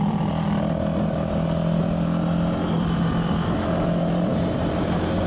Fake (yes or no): no